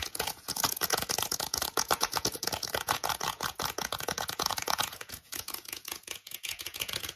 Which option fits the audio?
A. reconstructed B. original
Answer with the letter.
A